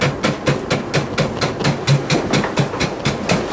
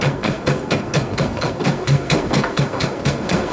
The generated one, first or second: second